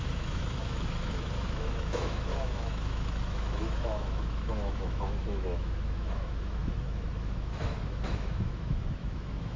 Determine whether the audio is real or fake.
fake